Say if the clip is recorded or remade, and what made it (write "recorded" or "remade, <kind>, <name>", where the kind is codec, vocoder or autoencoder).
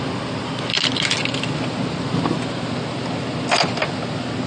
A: recorded